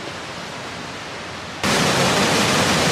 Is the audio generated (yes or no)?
no